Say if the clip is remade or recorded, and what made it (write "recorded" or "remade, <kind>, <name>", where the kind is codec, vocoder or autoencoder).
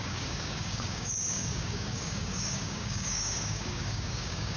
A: remade, codec, DAC